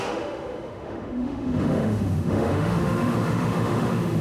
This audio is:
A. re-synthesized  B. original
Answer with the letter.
A